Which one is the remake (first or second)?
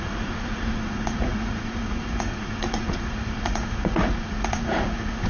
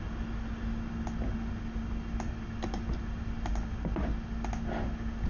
first